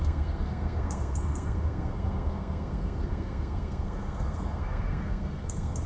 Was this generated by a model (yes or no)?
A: yes